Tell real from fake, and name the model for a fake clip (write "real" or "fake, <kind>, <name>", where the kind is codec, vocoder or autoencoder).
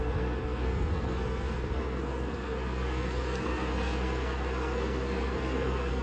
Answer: fake, codec, SNAC